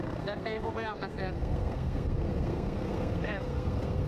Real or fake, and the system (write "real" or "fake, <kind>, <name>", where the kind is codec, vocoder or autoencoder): fake, codec, SNAC